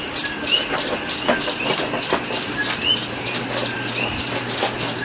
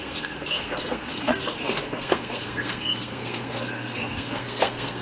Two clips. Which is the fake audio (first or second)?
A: second